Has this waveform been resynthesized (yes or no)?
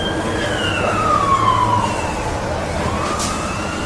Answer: no